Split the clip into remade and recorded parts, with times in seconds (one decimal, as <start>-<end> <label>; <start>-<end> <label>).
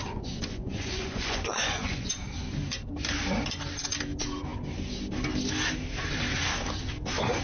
0.0-2.1 remade; 2.1-7.4 recorded